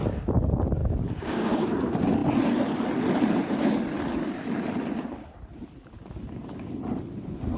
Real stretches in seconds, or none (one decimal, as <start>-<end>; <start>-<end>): 0.0-0.8; 1.7-7.6